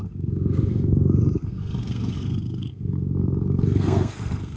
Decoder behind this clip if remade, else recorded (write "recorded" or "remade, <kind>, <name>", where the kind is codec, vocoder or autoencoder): remade, codec, SNAC